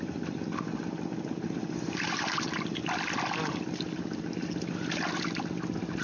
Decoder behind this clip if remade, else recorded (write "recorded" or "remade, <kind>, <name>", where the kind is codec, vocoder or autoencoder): recorded